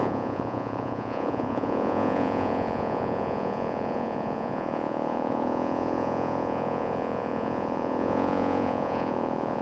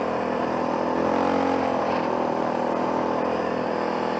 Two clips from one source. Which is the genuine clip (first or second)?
second